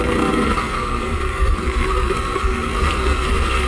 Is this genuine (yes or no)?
no